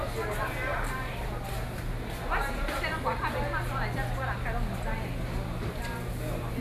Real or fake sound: real